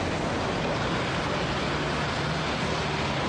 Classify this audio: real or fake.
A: real